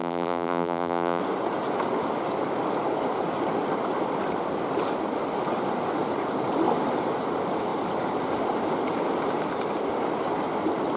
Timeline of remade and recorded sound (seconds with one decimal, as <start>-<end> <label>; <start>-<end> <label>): 0.0-1.2 remade; 1.2-11.0 recorded

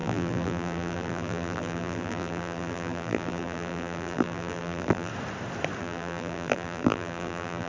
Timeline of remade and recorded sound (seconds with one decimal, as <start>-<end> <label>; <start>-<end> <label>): 0.0-5.1 remade; 5.1-5.8 recorded; 5.8-7.7 remade

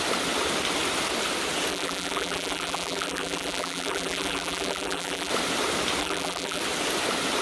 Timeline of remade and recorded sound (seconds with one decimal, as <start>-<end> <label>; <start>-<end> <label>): 0.0-1.7 recorded; 1.7-5.3 remade; 5.3-6.0 recorded; 6.0-6.6 remade; 6.6-7.4 recorded